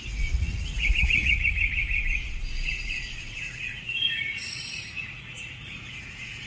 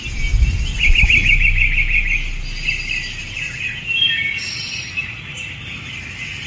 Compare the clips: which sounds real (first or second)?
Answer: second